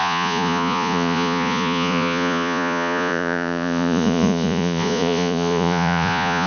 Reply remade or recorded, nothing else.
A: remade